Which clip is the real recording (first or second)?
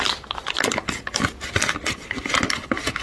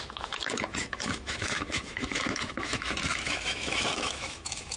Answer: first